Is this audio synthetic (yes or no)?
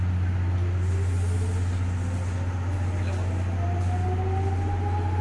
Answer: no